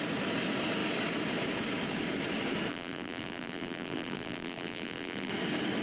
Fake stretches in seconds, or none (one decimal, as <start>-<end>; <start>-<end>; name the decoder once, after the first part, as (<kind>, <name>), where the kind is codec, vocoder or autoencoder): 2.7-5.3 (vocoder, BigVGAN v2)